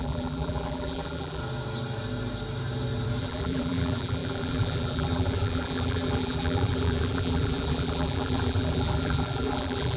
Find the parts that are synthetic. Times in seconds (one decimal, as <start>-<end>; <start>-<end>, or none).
0.0-1.4; 3.2-10.0